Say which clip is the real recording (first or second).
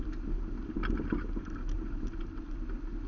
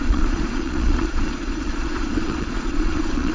first